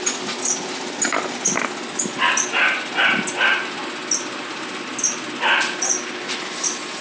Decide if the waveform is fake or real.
real